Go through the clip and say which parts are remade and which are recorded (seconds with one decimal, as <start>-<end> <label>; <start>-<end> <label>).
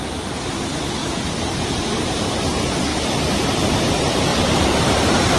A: 0.0-1.0 recorded; 1.0-2.1 remade; 2.1-2.9 recorded; 2.9-3.9 remade; 3.9-4.3 recorded; 4.3-4.9 remade; 4.9-5.4 recorded